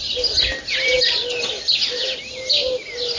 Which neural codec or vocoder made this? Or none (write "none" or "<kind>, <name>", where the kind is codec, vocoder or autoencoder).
none